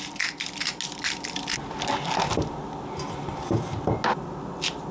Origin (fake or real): real